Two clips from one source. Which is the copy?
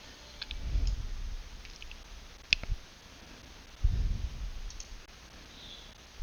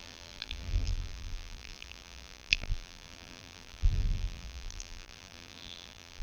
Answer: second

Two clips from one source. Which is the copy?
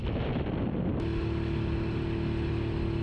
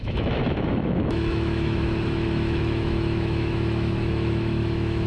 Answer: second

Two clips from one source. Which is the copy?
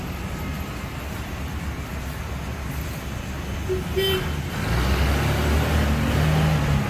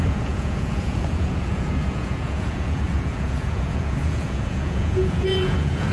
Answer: second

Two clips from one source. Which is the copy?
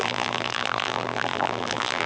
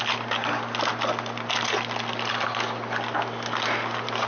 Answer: first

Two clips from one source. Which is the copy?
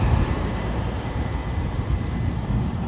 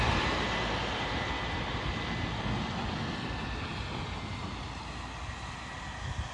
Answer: first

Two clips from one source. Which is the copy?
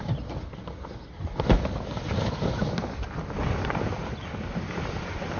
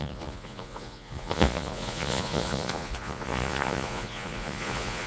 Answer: second